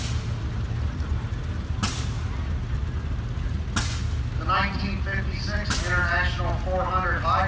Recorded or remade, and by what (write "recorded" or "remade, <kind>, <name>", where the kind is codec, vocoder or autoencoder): recorded